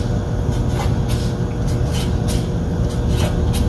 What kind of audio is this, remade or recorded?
recorded